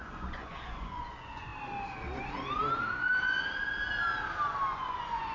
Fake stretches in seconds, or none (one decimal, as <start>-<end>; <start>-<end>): 0.0-1.5; 4.7-5.3